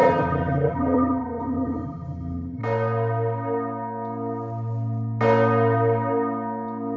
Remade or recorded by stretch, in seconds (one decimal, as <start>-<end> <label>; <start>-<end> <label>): 0.0-2.6 remade; 2.6-7.0 recorded